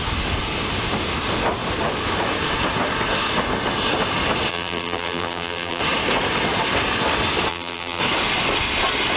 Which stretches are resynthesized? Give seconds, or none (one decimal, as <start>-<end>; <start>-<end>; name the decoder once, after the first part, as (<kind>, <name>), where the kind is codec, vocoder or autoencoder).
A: 4.5-5.8 (vocoder, BigVGAN v2); 7.5-8.0